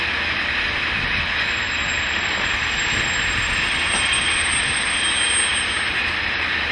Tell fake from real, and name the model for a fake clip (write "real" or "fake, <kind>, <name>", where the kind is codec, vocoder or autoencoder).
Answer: real